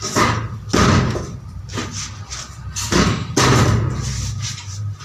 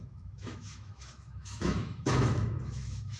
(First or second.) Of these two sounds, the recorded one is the first